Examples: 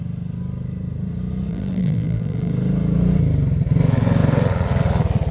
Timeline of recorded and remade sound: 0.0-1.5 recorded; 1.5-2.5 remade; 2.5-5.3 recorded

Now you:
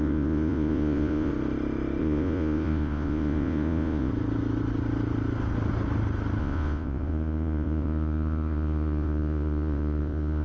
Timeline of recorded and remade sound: 0.0-1.3 remade; 1.3-2.0 recorded; 2.0-4.1 remade; 4.1-6.4 recorded; 6.4-10.4 remade